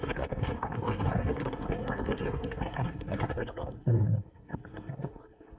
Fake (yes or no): yes